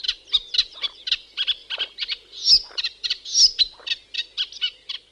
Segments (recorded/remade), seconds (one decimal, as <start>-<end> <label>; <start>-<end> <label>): 0.0-5.1 recorded